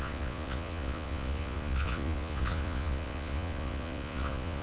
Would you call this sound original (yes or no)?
no